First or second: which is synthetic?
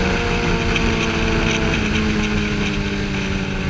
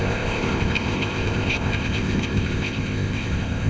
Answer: second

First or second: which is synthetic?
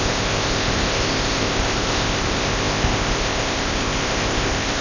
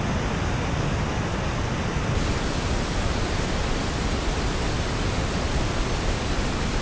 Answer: first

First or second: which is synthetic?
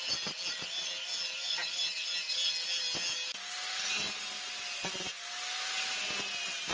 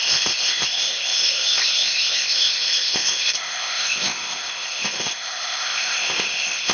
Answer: second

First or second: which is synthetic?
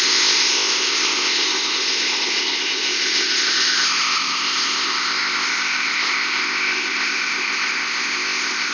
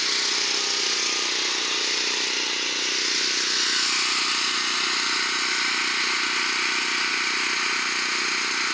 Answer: first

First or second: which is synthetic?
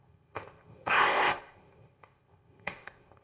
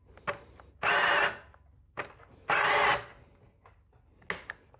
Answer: first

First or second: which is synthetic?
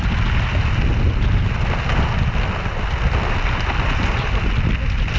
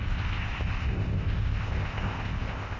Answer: second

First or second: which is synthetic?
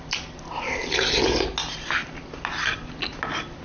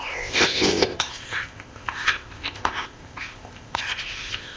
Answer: second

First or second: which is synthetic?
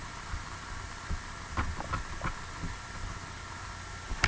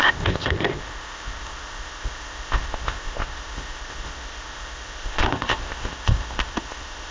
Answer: second